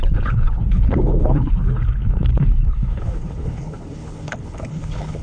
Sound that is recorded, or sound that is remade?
remade